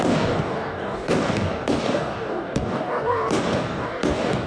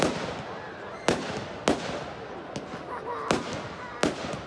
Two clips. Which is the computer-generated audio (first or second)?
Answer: first